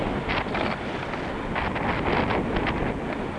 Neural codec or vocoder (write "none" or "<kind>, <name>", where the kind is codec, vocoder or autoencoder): none